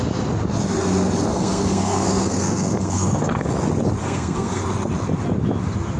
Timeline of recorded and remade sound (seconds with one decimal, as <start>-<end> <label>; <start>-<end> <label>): 0.0-1.3 recorded; 1.3-3.5 remade; 3.5-4.0 recorded; 4.0-4.6 remade; 4.6-6.0 recorded